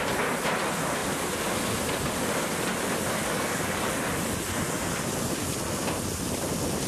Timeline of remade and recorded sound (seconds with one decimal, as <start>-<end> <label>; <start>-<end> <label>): 0.0-3.2 recorded; 3.2-3.8 remade; 3.8-6.9 recorded